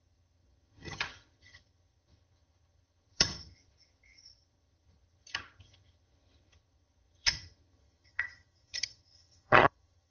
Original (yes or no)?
no